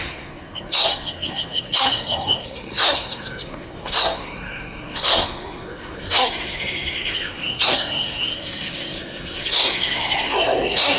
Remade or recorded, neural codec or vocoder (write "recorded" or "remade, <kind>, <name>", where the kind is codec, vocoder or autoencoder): remade, codec, SNAC